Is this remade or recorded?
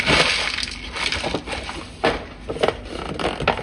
recorded